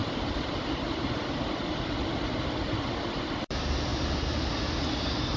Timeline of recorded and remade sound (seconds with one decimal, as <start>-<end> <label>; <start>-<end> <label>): 0.0-5.4 recorded